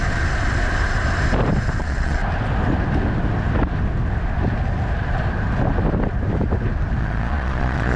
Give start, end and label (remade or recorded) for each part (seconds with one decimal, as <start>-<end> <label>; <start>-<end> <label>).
0.0-1.8 recorded; 1.8-2.2 remade; 2.2-7.0 recorded; 7.0-8.0 remade